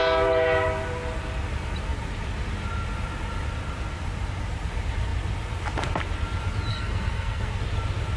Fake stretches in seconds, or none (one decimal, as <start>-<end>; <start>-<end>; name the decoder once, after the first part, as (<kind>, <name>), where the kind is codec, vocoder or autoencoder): 6.7-7.6 (codec, SNAC)